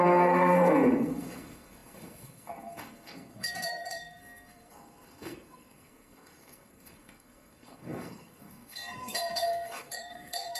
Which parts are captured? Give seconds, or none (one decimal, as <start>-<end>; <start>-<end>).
none